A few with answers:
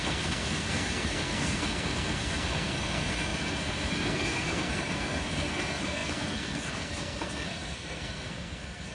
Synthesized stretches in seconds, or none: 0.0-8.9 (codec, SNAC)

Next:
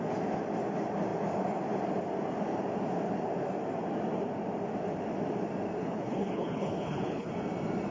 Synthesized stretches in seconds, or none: 5.8-7.3 (codec, HILCodec)

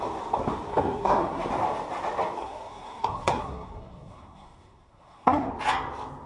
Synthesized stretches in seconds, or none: 0.7-1.5 (codec, SNAC); 2.4-5.5

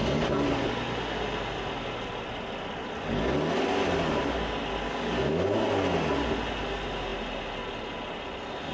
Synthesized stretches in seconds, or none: none

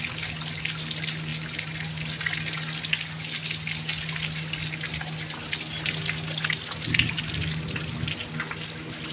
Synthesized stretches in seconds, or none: none

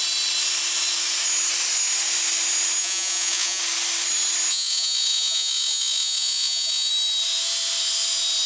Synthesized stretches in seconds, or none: 2.8-3.6 (vocoder, Vocos); 4.5-6.9

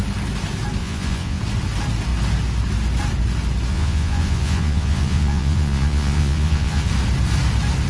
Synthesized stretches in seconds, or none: 0.8-1.4 (vocoder, Vocos); 3.7-6.9

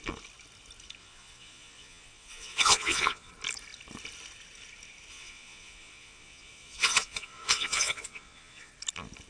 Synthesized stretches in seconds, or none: 1.0-3.3 (vocoder, Vocos); 5.1-8.7